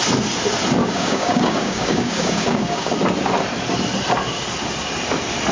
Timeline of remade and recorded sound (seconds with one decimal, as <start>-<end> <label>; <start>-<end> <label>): 0.0-0.8 recorded; 0.8-2.9 remade; 2.9-5.5 recorded